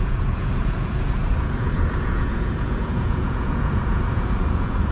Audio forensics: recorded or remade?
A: remade